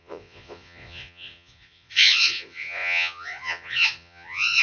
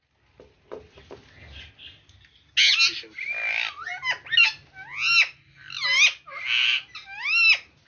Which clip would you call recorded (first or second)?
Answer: second